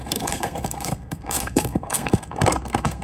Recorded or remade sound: remade